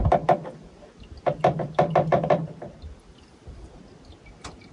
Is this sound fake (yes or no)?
no